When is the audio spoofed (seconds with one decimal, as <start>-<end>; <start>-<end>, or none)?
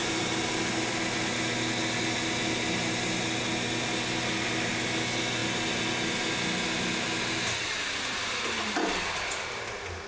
none